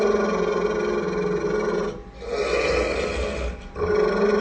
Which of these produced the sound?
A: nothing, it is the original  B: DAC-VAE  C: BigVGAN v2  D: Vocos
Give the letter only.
A